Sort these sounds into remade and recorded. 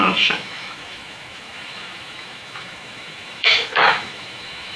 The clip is remade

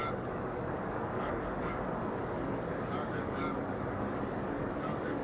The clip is remade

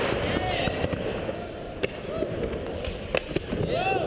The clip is recorded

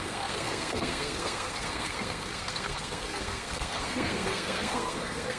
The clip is remade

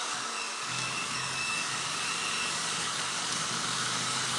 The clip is remade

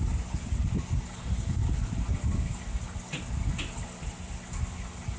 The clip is recorded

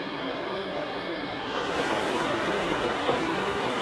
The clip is remade